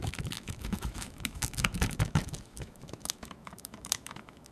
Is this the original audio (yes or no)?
no